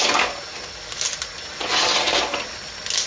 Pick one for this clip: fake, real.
real